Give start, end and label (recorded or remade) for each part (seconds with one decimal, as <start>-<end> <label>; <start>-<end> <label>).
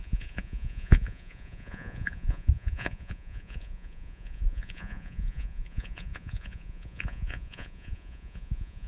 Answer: 0.0-8.9 remade